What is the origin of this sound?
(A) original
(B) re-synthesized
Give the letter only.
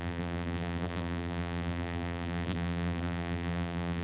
B